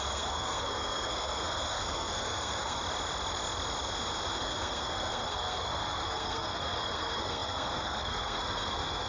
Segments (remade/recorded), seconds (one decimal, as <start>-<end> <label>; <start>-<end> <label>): 0.0-2.8 remade; 2.8-4.4 recorded; 4.4-9.1 remade